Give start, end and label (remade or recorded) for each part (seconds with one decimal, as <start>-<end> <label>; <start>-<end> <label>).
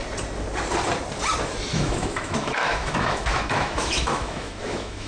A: 0.0-1.7 recorded; 1.7-5.1 remade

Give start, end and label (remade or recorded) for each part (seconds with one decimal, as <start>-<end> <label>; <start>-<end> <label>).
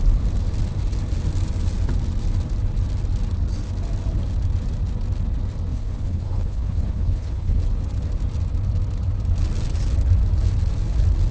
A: 0.0-5.7 recorded; 5.7-7.6 remade; 7.6-11.3 recorded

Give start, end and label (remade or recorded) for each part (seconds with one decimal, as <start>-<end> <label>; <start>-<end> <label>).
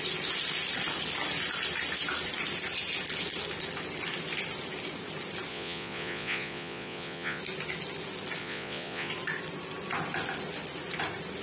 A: 0.0-5.5 recorded; 5.5-7.4 remade; 7.4-8.4 recorded; 8.4-9.1 remade; 9.1-11.4 recorded